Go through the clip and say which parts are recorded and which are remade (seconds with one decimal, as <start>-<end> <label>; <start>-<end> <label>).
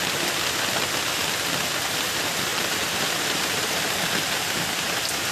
0.0-2.5 recorded; 2.5-3.8 remade; 3.8-5.3 recorded